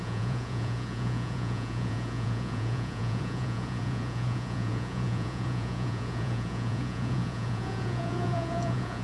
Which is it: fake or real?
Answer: fake